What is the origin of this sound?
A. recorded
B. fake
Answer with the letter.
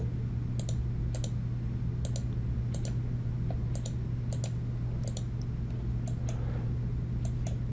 A